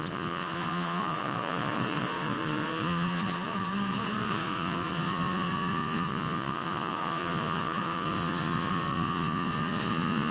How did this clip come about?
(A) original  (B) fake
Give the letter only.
B